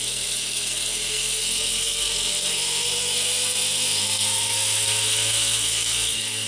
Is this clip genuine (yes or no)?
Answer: no